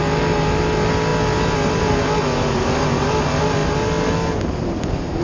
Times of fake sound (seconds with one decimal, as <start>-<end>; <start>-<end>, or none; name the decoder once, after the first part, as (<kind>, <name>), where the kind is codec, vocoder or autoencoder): none